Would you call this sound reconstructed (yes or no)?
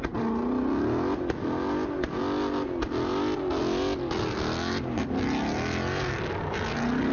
no